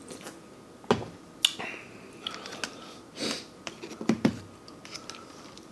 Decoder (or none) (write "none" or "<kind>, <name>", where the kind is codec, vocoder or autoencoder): none